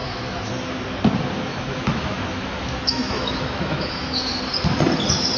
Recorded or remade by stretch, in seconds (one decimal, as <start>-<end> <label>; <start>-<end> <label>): 0.0-0.5 remade; 0.5-1.5 recorded; 1.5-4.4 remade; 4.4-5.4 recorded